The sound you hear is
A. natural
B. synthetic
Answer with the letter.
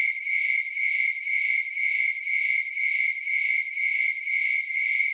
A